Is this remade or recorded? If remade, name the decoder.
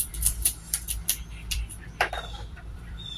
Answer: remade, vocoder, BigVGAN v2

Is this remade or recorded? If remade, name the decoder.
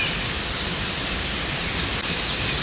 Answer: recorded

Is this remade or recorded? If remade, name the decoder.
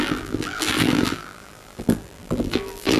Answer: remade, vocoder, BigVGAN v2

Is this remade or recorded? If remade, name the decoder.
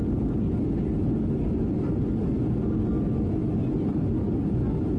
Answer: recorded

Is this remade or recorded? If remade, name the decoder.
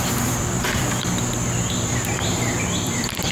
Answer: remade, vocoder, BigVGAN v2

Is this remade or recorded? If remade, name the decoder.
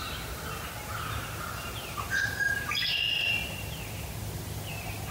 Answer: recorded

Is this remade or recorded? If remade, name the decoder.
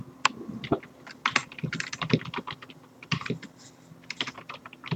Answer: remade, vocoder, BigVGAN v2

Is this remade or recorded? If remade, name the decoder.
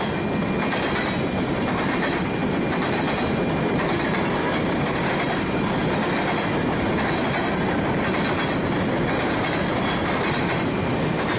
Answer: recorded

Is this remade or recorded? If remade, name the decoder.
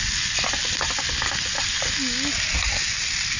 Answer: recorded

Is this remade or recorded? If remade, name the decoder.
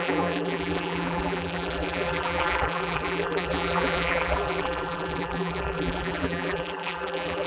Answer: remade, vocoder, BigVGAN v2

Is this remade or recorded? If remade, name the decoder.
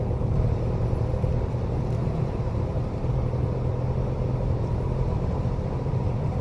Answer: recorded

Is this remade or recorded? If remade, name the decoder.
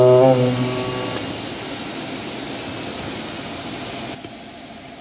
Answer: recorded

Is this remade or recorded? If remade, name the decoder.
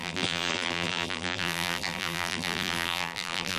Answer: remade, vocoder, BigVGAN v2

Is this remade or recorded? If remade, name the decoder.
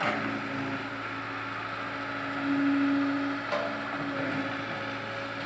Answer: recorded